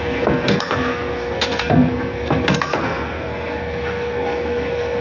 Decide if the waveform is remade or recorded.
remade